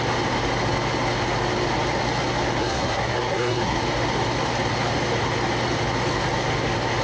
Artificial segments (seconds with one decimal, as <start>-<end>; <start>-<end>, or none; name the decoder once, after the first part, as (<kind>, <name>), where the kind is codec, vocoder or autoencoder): 2.6-3.8 (codec, SNAC)